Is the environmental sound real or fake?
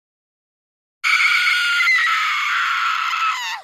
real